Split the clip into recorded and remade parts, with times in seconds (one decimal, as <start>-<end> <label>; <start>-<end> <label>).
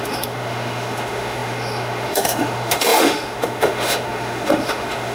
0.0-5.1 remade